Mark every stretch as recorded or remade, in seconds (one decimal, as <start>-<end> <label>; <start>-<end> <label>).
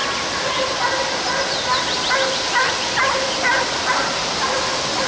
0.0-5.1 recorded